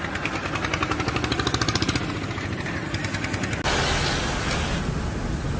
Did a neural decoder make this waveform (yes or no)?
no